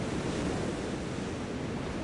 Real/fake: real